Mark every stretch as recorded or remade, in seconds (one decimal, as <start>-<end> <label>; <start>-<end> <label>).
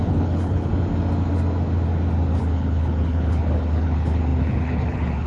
0.0-0.7 remade; 0.7-2.4 recorded; 2.4-5.3 remade